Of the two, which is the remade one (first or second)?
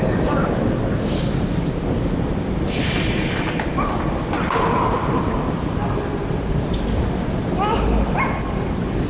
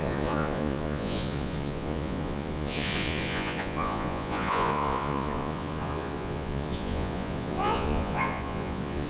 second